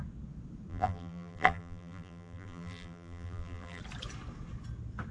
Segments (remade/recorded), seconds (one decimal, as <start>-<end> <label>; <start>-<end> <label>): 0.0-0.7 recorded; 0.7-3.8 remade; 3.8-5.1 recorded